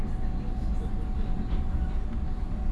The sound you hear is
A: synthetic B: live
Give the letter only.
B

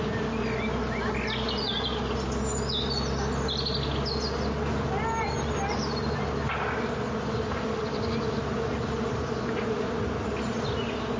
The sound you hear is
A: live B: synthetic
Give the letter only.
A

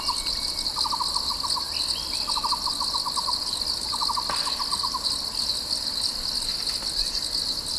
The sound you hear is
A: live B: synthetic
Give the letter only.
A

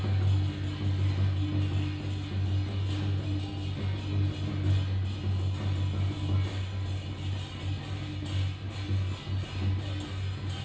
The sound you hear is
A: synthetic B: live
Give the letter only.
B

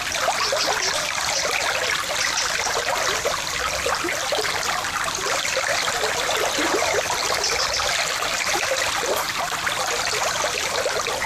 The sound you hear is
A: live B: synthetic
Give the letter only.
A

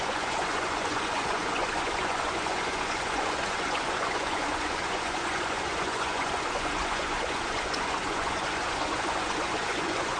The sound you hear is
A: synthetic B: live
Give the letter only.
A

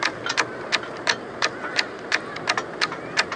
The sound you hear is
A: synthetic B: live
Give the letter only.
B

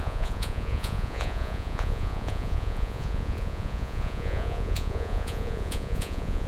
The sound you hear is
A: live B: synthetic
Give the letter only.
B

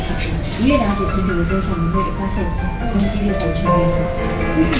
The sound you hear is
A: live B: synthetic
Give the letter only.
A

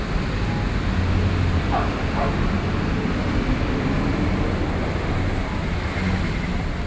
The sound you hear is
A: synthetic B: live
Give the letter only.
B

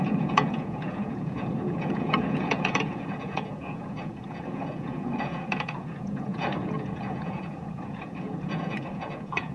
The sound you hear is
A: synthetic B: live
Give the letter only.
A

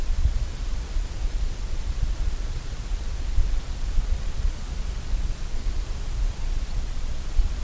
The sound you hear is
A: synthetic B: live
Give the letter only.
A